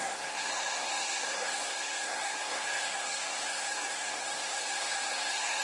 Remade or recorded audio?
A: remade